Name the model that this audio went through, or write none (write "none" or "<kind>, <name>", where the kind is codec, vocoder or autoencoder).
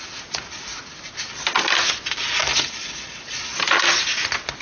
none